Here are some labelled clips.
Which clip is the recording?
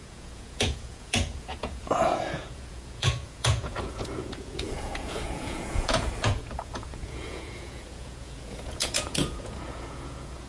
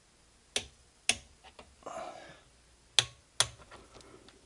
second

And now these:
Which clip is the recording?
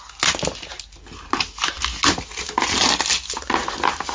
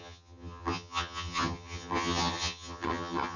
first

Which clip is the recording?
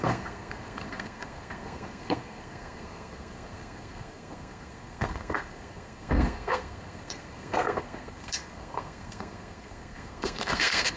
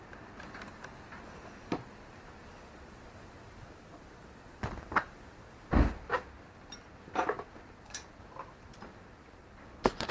second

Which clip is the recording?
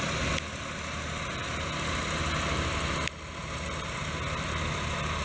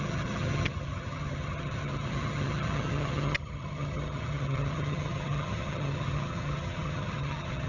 first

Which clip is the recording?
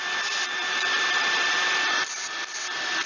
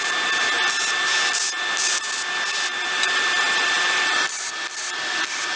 second